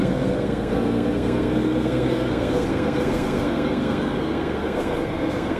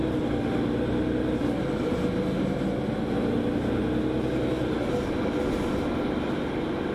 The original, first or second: second